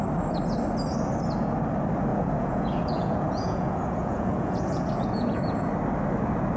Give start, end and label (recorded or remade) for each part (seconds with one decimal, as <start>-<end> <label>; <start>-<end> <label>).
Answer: 0.0-2.1 recorded; 2.1-5.7 remade; 5.7-6.6 recorded